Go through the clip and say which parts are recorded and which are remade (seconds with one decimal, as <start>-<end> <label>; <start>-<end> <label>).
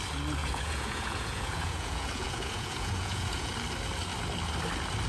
0.0-0.4 recorded; 0.4-3.5 remade; 3.5-5.1 recorded